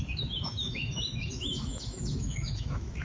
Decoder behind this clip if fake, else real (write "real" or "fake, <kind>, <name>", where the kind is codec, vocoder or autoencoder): fake, autoencoder, DAC-VAE